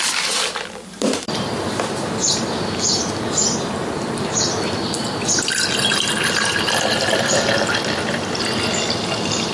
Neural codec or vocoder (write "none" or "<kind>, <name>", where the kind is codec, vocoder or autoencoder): none